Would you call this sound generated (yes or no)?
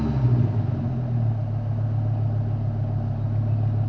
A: no